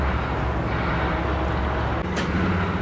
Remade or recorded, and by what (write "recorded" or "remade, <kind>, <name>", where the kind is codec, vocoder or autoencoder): recorded